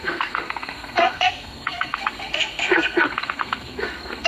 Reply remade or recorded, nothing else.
remade